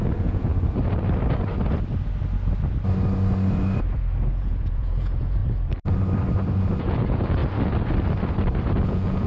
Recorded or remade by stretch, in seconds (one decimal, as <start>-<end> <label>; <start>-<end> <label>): 0.0-0.5 remade; 0.5-4.3 recorded; 4.3-5.4 remade; 5.4-6.8 recorded; 6.8-7.4 remade; 7.4-8.7 recorded; 8.7-9.3 remade